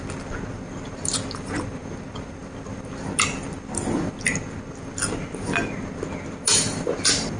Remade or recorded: recorded